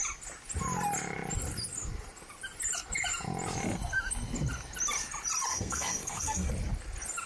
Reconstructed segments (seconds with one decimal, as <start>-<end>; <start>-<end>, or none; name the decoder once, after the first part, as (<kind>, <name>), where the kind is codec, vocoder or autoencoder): 5.5-6.5 (codec, SNAC)